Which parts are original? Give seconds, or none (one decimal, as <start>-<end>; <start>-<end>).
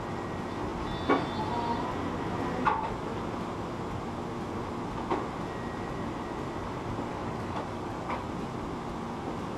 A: 0.0-7.1; 8.3-9.6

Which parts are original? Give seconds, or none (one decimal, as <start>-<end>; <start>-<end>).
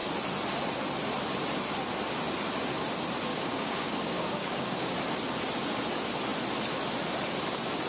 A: 0.0-3.3; 4.9-7.9